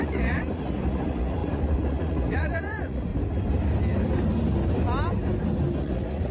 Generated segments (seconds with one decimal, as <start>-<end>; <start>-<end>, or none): 0.0-3.1; 5.8-6.3